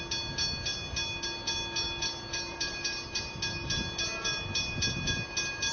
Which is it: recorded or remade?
recorded